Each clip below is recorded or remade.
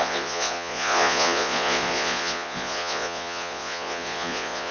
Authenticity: remade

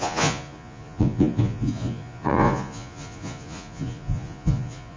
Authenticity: remade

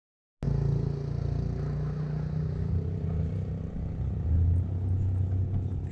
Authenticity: recorded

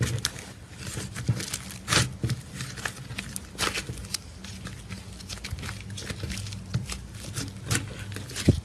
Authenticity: recorded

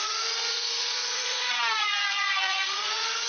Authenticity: remade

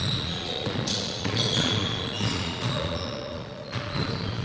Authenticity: remade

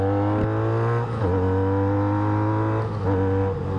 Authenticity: recorded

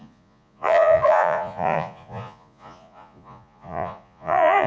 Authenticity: remade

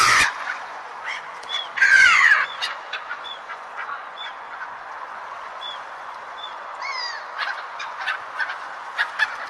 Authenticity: remade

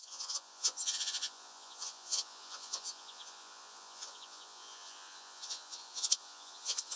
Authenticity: remade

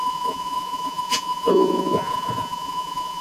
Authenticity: remade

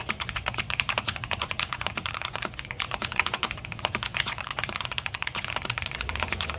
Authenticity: remade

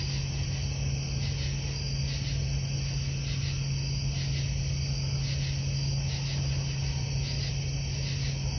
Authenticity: recorded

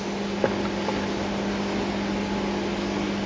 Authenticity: recorded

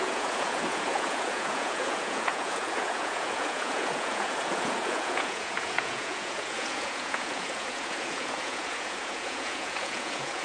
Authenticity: remade